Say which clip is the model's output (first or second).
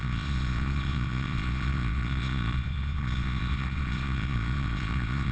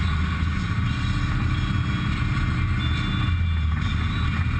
first